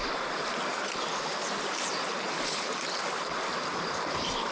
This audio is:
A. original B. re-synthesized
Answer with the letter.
A